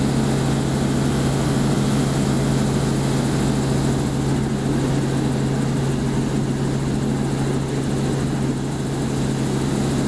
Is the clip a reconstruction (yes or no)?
no